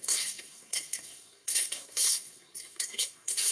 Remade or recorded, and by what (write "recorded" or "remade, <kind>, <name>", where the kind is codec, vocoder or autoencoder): remade, codec, SNAC